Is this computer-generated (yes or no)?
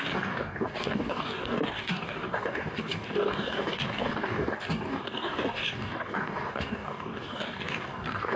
yes